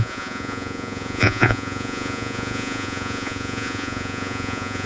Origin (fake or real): fake